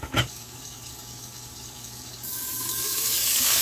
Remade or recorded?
remade